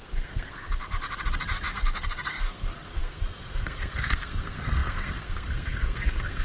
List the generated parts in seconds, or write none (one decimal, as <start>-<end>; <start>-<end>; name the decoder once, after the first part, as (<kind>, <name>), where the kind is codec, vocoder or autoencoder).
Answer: 0.0-0.8 (codec, SNAC); 1.7-6.4